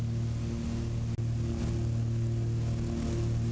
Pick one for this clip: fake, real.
real